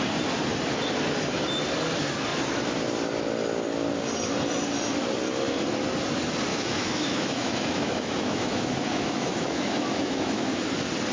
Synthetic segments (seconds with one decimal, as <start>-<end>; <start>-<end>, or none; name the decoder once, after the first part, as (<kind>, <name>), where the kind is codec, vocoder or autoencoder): 6.5-10.7 (autoencoder, DAC-VAE)